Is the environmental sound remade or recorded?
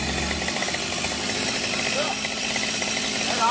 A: remade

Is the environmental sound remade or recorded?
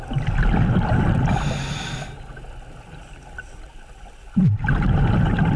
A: recorded